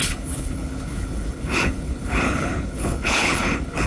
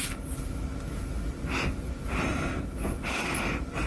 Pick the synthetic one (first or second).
first